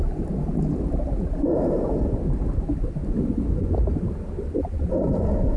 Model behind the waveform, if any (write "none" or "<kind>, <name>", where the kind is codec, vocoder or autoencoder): none